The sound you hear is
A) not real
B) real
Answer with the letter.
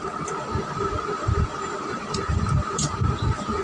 A